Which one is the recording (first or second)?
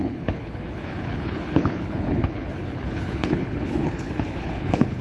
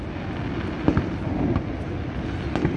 second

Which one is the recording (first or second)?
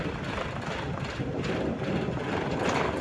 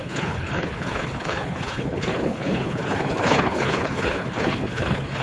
first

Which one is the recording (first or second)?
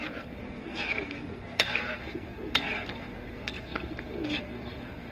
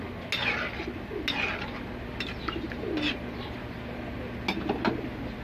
second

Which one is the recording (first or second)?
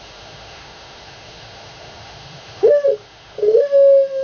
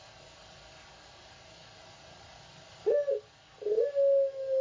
second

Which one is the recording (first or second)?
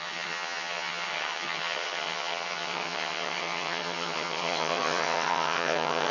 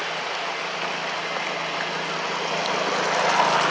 second